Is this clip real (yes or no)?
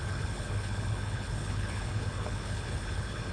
no